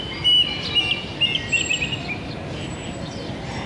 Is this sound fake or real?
real